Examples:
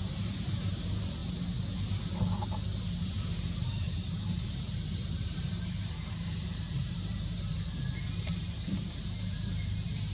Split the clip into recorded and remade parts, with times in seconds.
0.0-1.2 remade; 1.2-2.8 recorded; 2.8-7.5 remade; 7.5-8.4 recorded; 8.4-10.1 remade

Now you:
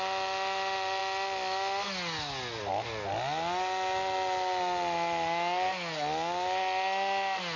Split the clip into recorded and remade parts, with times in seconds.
0.0-7.6 recorded

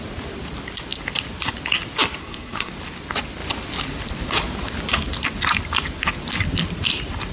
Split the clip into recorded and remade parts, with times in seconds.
0.0-2.2 recorded; 2.2-2.7 remade; 2.7-7.3 recorded

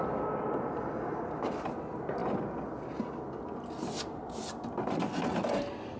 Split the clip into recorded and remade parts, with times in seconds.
0.0-6.0 recorded

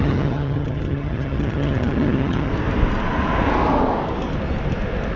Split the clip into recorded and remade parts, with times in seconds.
0.0-2.5 remade; 2.5-5.2 recorded

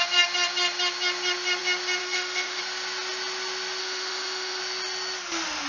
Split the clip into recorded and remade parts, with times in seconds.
0.0-2.0 recorded; 2.0-2.6 remade; 2.6-3.8 recorded; 3.8-4.6 remade; 4.6-5.7 recorded